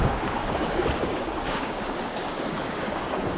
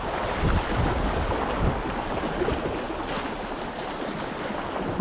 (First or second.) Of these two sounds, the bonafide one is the second